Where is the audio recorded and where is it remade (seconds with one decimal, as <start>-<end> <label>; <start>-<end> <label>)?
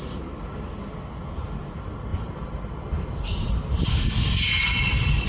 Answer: 0.0-2.1 recorded; 2.1-4.0 remade; 4.0-4.6 recorded; 4.6-5.3 remade